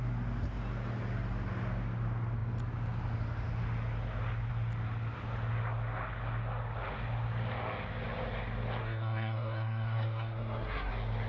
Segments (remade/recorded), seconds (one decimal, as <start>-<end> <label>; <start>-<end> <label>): 0.0-8.8 recorded; 8.8-10.9 remade; 10.9-11.3 recorded